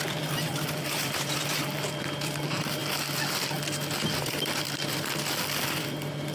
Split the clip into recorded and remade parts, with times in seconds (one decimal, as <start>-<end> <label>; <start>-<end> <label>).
0.0-2.8 remade; 2.8-3.9 recorded; 3.9-6.3 remade